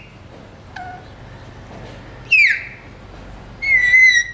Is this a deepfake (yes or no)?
no